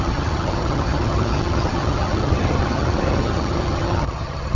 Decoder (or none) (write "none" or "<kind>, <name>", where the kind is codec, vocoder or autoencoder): vocoder, HiFi-GAN